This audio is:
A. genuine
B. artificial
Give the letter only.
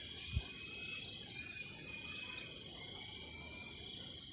A